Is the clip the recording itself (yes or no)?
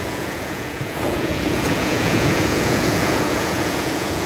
no